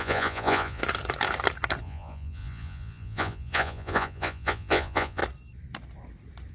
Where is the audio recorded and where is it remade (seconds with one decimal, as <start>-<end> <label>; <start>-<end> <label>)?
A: 0.0-0.8 remade; 0.8-1.8 recorded; 1.8-5.2 remade; 5.2-6.5 recorded